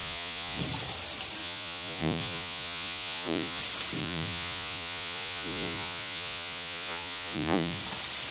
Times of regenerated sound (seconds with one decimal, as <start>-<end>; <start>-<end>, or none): 0.0-0.6; 1.4-3.6; 4.0-7.8